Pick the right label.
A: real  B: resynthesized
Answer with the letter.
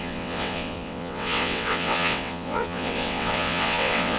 B